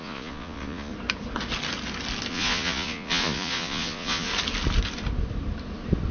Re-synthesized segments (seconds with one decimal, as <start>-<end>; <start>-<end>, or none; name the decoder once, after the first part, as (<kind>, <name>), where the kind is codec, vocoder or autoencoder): 0.0-0.9 (vocoder, Vocos); 2.3-4.3